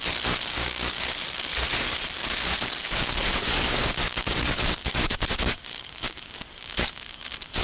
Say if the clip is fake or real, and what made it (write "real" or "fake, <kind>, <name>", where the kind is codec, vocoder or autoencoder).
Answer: fake, codec, DAC